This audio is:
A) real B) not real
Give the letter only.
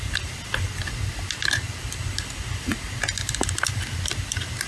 A